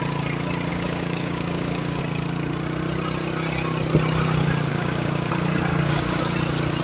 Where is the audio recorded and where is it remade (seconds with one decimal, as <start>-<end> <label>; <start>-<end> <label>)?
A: 0.0-0.7 recorded; 0.7-2.0 remade; 2.0-4.7 recorded; 4.7-5.3 remade; 5.3-5.7 recorded; 5.7-6.2 remade; 6.2-6.8 recorded